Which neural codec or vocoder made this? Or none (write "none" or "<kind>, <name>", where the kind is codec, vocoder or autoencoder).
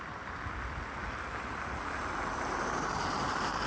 none